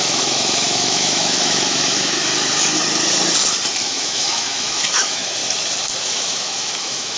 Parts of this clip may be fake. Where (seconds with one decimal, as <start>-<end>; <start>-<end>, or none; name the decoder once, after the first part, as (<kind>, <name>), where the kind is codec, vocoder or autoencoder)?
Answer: 0.0-2.3 (autoencoder, DAC-VAE); 3.9-5.4; 6.0-7.2